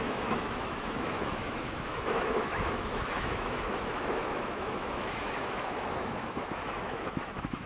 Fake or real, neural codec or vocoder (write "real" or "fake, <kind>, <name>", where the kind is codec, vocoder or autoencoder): fake, autoencoder, DAC-VAE